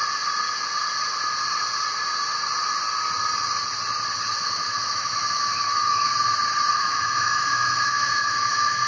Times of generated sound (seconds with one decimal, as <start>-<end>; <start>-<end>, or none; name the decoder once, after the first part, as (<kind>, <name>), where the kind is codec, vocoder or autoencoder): 4.3-6.1 (autoencoder, DAC-VAE); 6.7-8.9